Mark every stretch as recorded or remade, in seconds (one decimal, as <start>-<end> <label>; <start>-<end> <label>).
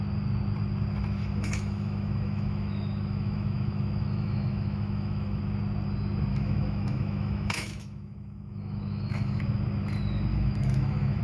0.0-1.2 recorded; 1.2-5.4 remade; 5.4-6.3 recorded; 6.3-9.4 remade; 9.4-10.3 recorded; 10.3-11.2 remade